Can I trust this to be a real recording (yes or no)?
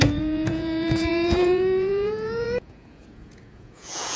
no